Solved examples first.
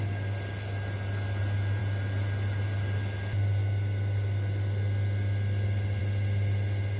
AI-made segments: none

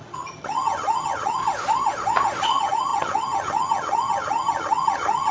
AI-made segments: 0.0-1.4; 2.4-5.3

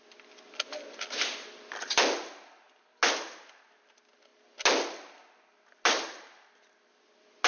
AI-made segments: none

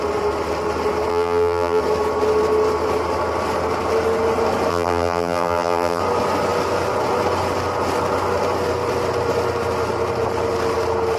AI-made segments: 1.1-1.8; 4.7-6.0

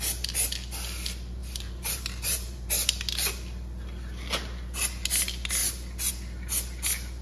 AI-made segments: 1.4-2.7